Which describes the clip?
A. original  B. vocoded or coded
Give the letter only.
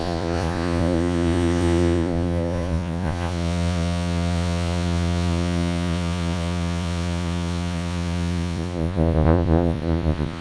B